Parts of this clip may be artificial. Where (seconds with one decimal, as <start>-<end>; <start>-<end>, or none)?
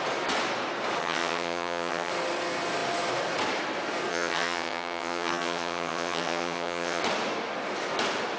1.0-2.1; 4.1-7.0